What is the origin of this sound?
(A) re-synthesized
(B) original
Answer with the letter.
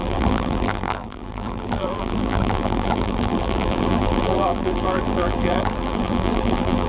A